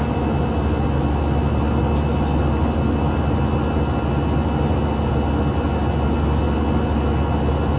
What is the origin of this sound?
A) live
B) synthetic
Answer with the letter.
A